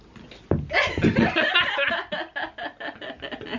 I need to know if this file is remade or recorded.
recorded